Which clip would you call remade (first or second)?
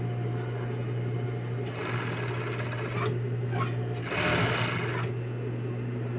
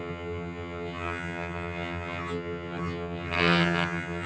second